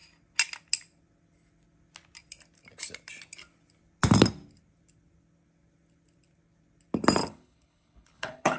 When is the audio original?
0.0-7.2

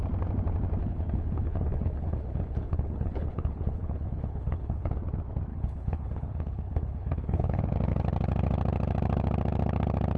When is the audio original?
0.0-0.8; 4.9-5.5; 7.6-10.2

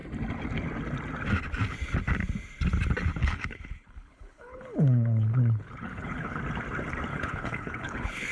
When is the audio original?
0.0-3.2; 6.4-7.1